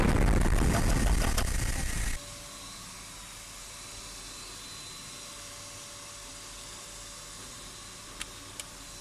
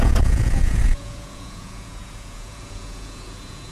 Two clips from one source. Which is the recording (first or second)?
first